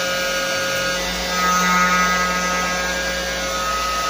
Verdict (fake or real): real